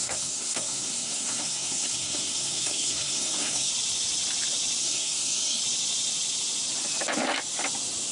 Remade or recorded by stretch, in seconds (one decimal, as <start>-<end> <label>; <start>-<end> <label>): 0.0-3.7 remade; 3.7-4.8 recorded; 4.8-5.6 remade; 5.6-8.1 recorded